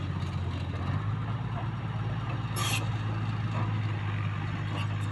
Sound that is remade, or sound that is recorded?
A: recorded